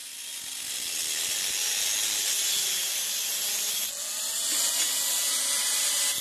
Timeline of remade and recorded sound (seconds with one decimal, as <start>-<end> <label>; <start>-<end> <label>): 0.0-2.6 recorded; 2.6-3.3 remade; 3.3-5.6 recorded; 5.6-6.2 remade